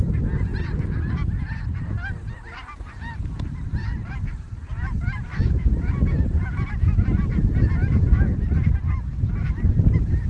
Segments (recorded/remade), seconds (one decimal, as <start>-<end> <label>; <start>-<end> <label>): 0.0-5.3 recorded; 5.3-5.9 remade; 5.9-7.8 recorded; 7.8-8.3 remade; 8.3-10.3 recorded